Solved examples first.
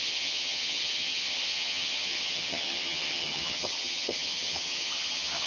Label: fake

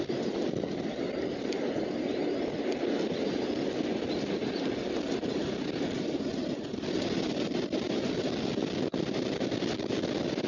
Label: real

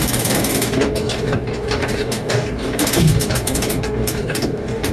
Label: fake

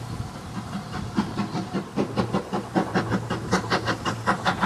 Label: real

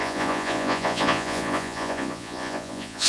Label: fake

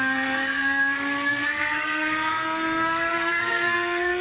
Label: fake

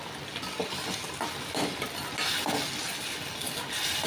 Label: real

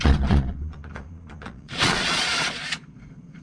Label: fake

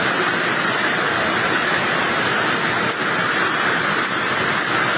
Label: real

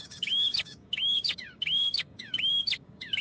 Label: fake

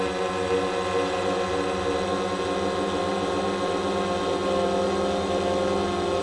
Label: real